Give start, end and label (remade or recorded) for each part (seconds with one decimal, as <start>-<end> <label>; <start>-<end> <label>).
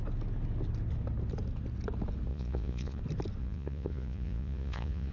0.0-2.3 recorded; 2.3-3.0 remade; 3.0-3.4 recorded; 3.4-5.1 remade